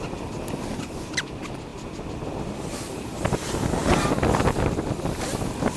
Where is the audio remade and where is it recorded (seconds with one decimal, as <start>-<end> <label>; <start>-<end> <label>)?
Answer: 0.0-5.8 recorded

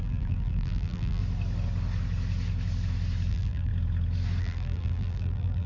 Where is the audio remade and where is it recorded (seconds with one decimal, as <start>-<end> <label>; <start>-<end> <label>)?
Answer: 0.0-1.2 remade; 1.2-3.3 recorded; 3.3-3.7 remade; 3.7-4.4 recorded; 4.4-5.7 remade

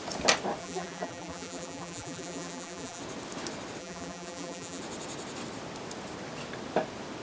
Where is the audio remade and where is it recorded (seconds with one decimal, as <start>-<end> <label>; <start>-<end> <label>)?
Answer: 0.0-0.6 recorded; 0.6-3.0 remade; 3.0-3.8 recorded; 3.8-4.8 remade; 4.8-7.2 recorded

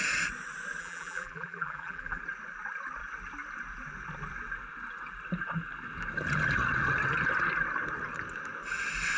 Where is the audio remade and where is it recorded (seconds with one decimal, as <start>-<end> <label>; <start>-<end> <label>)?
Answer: 0.0-0.8 recorded; 0.8-2.2 remade; 2.2-9.2 recorded

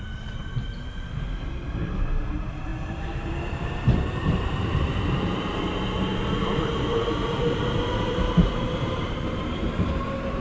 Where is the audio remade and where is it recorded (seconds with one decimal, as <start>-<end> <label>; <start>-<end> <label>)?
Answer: 0.0-10.4 remade